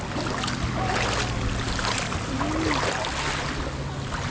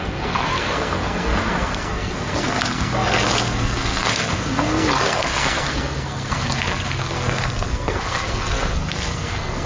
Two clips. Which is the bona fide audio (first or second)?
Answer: first